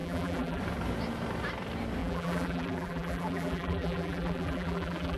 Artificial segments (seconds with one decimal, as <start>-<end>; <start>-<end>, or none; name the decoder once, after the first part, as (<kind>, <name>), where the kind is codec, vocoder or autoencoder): 0.0-0.6 (vocoder, BigVGAN v2); 2.0-5.2